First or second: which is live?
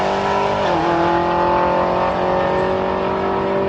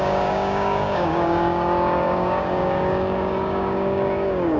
first